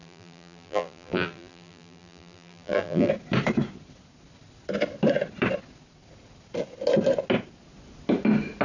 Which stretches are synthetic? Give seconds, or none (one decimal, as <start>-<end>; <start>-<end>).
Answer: 0.0-3.1